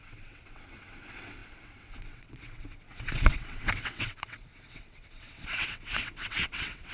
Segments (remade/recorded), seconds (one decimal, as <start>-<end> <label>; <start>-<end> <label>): 0.0-6.9 remade